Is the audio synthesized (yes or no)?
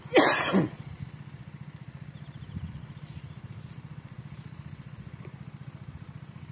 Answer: no